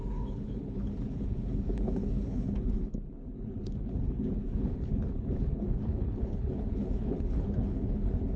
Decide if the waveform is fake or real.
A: fake